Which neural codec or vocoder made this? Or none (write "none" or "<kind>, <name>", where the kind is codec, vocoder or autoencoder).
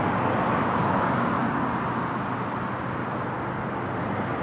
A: none